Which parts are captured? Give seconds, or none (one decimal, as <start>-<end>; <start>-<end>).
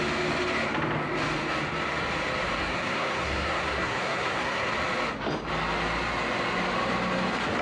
0.0-2.6; 4.7-7.6